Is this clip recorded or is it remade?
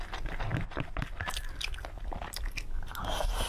recorded